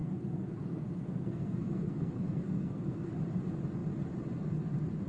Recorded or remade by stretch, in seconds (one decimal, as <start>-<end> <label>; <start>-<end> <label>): 0.0-3.1 remade; 3.1-5.1 recorded